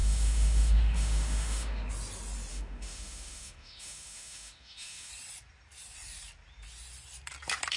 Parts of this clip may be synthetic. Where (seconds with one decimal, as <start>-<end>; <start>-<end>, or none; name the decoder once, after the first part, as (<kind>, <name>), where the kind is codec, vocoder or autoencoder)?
0.0-1.9 (autoencoder, DAC-VAE); 2.5-5.1